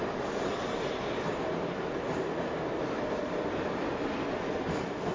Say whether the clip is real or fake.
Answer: real